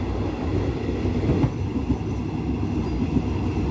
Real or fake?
real